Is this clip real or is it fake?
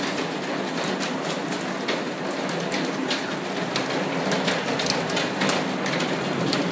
real